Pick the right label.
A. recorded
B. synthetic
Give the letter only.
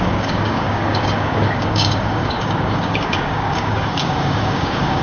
B